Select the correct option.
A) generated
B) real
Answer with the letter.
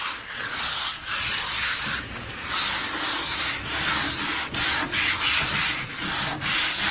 B